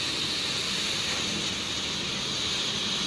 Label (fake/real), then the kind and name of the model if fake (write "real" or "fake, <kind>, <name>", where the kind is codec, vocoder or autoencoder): real